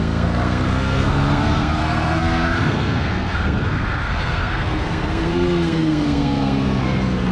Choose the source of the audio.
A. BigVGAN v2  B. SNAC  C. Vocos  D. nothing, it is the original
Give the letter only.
B